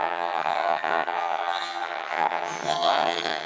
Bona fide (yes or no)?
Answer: no